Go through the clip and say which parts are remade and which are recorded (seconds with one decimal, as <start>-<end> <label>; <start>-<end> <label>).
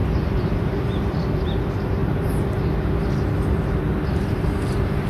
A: 0.0-5.1 recorded